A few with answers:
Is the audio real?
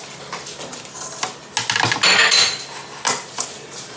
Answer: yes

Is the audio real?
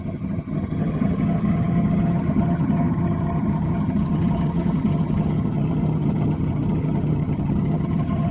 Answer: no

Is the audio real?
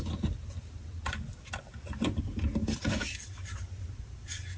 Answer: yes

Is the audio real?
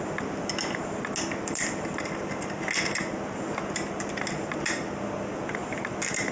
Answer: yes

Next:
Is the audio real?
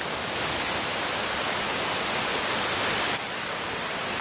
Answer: yes